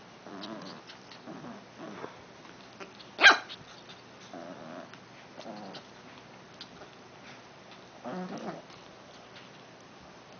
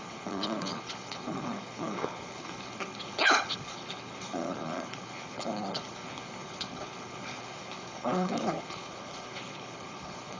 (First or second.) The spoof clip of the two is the second